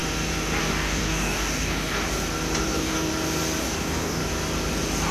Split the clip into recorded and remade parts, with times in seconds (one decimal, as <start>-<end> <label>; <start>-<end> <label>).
0.0-0.6 recorded; 0.6-2.0 remade; 2.0-2.6 recorded; 2.6-3.1 remade; 3.1-3.6 recorded; 3.6-4.2 remade; 4.2-5.1 recorded